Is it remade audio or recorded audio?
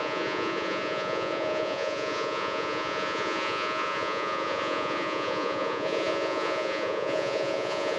remade